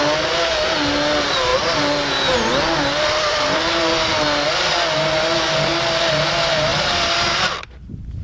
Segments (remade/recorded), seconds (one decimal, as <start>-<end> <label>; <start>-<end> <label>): 0.0-8.2 recorded